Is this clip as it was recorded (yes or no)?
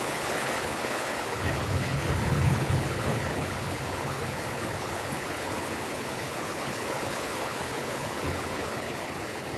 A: no